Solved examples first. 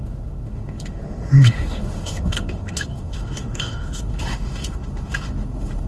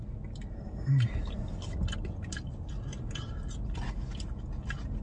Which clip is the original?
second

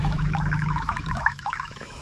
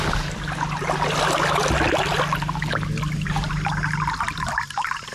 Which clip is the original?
second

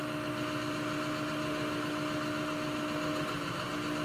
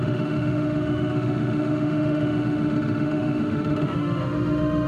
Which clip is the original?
first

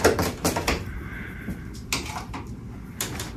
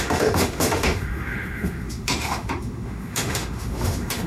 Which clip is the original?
first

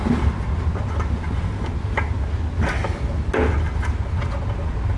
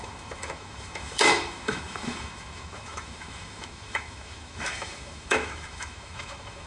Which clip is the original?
first